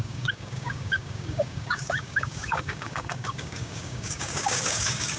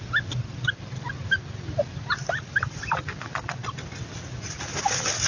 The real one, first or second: second